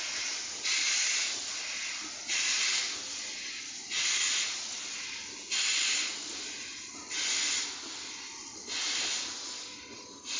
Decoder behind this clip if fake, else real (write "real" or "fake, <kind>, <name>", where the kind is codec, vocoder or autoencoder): real